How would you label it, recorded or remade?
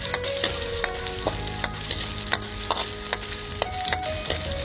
recorded